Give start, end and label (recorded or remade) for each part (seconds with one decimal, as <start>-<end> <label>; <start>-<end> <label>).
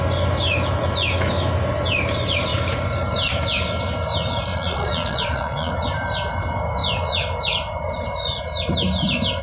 0.0-4.5 recorded; 4.5-5.7 remade; 5.7-9.4 recorded